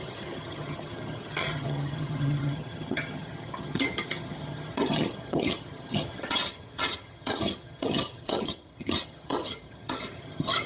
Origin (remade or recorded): remade